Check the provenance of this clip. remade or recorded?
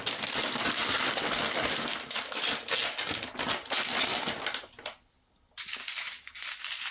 recorded